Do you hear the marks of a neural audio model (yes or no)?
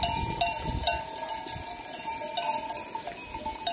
no